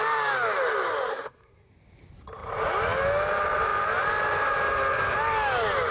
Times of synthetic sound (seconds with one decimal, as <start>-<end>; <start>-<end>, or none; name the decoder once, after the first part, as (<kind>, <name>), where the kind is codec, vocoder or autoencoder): 1.1-1.7 (codec, SNAC)